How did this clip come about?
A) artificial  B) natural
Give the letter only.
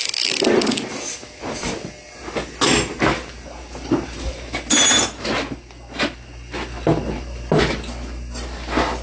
B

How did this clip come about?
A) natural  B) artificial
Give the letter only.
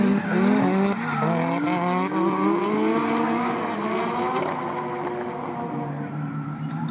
A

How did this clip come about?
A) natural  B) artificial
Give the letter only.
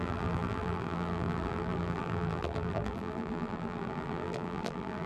B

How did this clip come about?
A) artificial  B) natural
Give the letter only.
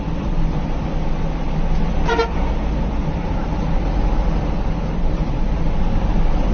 B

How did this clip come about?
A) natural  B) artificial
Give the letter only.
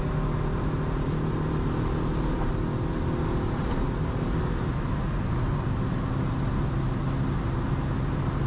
A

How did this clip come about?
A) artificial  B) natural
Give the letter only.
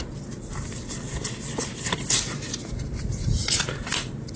B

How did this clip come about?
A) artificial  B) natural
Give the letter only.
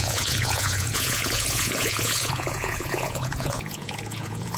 A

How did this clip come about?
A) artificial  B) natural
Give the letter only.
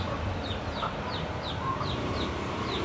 B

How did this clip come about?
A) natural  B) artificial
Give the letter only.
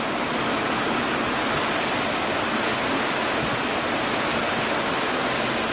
A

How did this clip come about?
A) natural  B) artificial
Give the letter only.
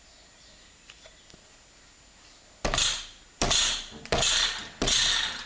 A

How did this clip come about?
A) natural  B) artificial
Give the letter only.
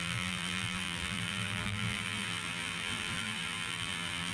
B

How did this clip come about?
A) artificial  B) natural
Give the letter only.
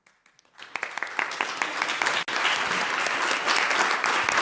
B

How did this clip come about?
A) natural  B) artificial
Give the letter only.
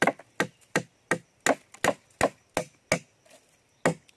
A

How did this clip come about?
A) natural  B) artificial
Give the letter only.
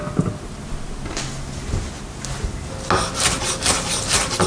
A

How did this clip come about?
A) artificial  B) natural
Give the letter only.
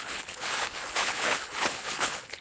A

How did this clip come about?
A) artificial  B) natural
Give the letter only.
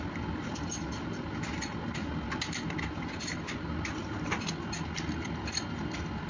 B